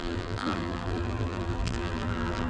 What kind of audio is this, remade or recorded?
remade